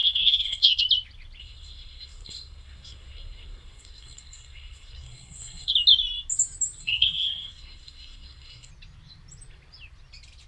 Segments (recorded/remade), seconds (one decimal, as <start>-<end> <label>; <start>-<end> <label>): 0.0-0.8 remade; 0.8-1.4 recorded; 1.4-5.7 remade; 5.7-6.8 recorded; 6.8-8.7 remade; 8.7-10.5 recorded